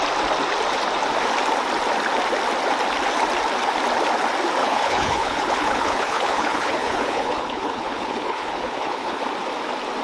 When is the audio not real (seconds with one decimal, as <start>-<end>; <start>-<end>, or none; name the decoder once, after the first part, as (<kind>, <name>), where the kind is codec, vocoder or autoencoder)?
4.6-9.2 (codec, HILCodec)